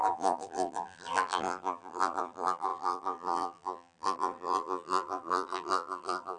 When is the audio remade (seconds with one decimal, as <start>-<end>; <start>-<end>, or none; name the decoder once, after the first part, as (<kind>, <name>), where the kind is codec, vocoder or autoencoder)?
0.0-6.4 (vocoder, BigVGAN v2)